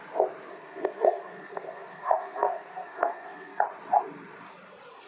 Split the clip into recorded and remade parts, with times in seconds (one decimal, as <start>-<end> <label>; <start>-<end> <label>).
0.0-0.5 recorded; 0.5-3.6 remade; 3.6-5.1 recorded